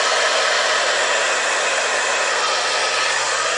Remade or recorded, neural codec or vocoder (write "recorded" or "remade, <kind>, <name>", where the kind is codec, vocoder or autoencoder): recorded